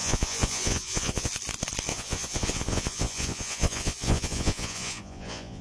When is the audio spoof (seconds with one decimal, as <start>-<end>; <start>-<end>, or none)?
0.0-1.3; 1.9-5.6